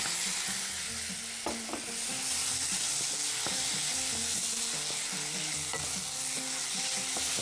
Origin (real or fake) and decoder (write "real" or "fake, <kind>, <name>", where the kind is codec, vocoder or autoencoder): real